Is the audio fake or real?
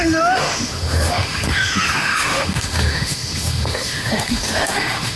fake